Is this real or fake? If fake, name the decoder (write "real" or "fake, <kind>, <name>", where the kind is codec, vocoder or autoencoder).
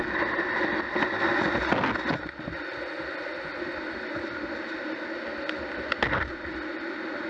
real